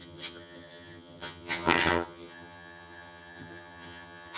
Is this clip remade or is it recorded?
remade